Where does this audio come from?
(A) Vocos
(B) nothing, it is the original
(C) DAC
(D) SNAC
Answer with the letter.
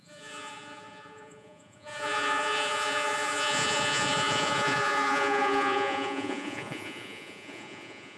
A